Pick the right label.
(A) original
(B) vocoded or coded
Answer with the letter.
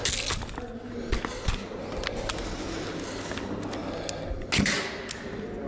A